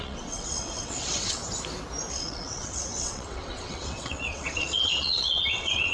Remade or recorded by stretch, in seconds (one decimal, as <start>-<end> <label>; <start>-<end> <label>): 0.0-1.4 remade; 1.4-2.1 recorded; 2.1-5.9 remade